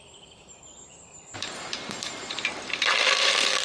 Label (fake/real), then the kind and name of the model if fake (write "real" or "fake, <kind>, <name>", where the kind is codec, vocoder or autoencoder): fake, vocoder, BigVGAN v2